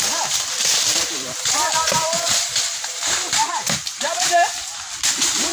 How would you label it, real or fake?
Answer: fake